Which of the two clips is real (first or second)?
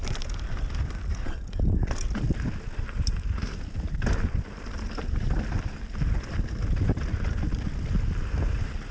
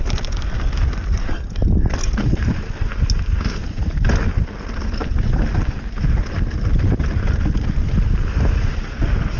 second